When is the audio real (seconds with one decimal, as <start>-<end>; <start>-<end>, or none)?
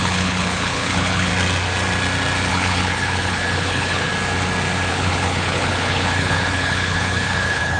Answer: 1.3-2.5; 4.1-4.9